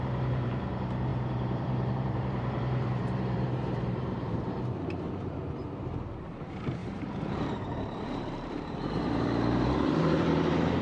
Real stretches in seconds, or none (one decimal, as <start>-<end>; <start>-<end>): none